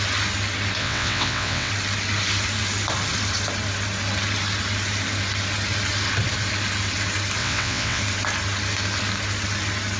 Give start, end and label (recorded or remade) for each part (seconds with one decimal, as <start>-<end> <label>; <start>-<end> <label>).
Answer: 0.0-0.8 recorded; 0.8-1.7 remade; 1.7-7.4 recorded; 7.4-8.0 remade; 8.0-10.0 recorded